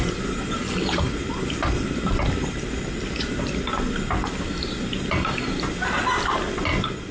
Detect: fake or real real